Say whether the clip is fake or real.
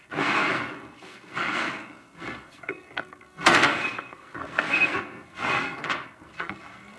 fake